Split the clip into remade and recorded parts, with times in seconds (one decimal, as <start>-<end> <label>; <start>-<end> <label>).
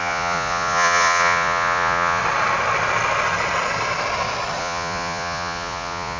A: 0.0-2.2 remade; 2.2-4.6 recorded; 4.6-6.2 remade